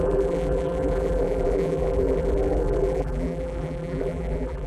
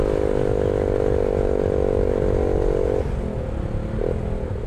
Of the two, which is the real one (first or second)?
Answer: second